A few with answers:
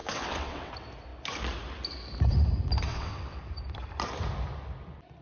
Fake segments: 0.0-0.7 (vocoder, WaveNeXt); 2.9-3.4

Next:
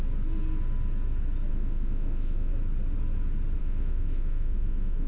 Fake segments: 1.5-2.5 (autoencoder, DAC-VAE); 3.6-5.1

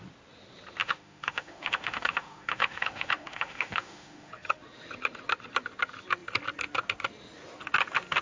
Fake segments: 0.8-4.3 (autoencoder, DAC-VAE)

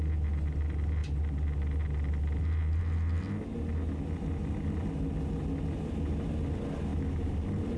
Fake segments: none

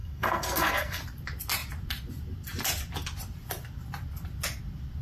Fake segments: 0.0-1.0 (codec, SNAC)

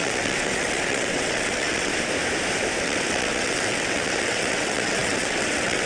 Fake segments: 0.0-1.9 (vocoder, WaveNeXt); 2.8-5.9